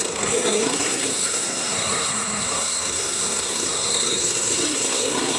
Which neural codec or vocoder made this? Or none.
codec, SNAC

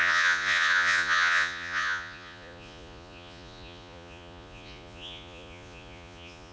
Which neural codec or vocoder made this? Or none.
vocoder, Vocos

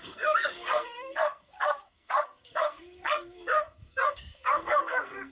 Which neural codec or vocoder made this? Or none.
codec, SNAC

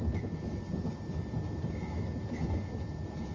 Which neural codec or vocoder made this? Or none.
none